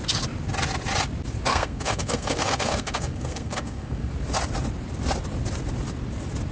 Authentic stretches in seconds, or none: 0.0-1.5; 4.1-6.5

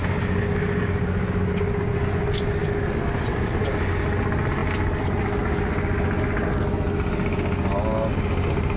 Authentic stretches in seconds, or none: 1.0-8.8

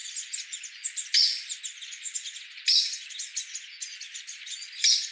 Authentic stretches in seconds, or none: 0.0-5.1

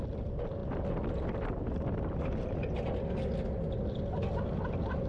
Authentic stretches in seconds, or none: 0.0-5.1

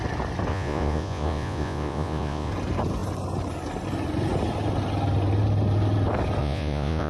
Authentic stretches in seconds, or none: 0.0-0.5; 2.5-6.4

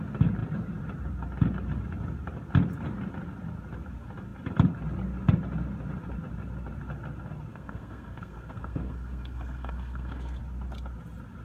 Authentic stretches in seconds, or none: 0.0-7.5; 10.4-11.4

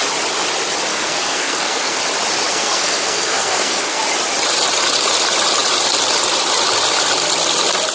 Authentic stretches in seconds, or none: 0.0-0.9; 2.0-2.5; 4.0-7.9

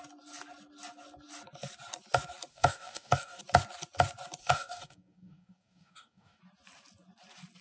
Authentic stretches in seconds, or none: 0.0-2.5; 3.4-4.4; 6.4-7.6